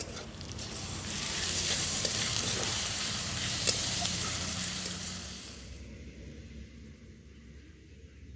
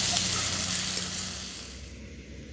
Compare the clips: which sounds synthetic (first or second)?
first